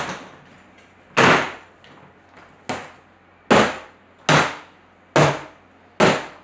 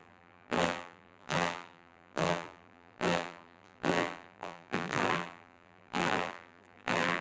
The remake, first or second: second